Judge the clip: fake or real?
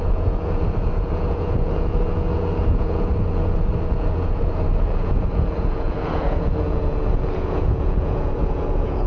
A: fake